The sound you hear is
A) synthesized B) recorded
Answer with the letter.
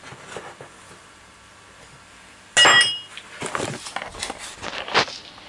B